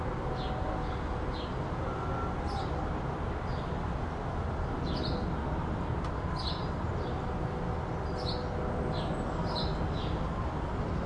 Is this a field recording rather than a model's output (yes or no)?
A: yes